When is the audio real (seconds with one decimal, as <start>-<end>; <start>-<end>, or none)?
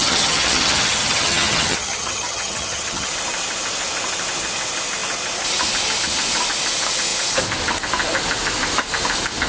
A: 3.1-9.5